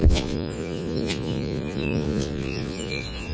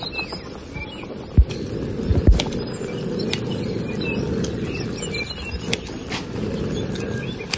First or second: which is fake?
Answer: first